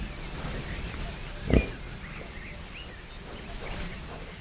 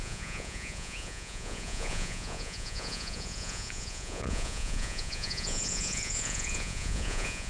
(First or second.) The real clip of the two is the first